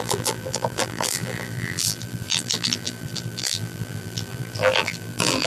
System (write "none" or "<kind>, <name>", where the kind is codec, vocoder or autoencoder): vocoder, BigVGAN v2